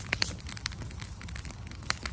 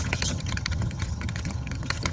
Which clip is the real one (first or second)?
first